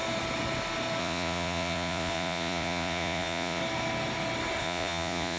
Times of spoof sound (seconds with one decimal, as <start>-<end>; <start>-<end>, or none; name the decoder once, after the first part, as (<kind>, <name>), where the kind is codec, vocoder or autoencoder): 1.0-3.6 (vocoder, Vocos); 4.6-5.4